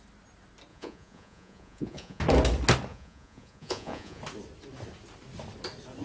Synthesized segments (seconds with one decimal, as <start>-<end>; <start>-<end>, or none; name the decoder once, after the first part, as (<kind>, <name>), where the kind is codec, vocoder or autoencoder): 0.7-2.2 (vocoder, Vocos); 2.9-4.2